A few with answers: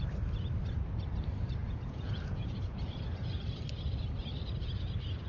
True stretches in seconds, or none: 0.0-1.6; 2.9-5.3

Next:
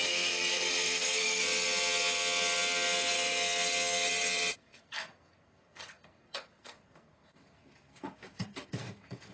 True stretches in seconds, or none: 1.4-4.5

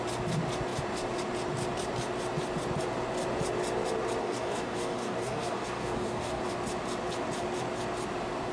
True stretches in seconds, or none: 0.0-4.2; 6.4-8.5

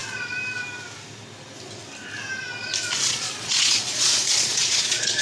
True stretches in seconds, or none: 0.0-3.1